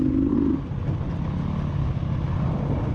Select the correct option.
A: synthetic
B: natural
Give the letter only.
B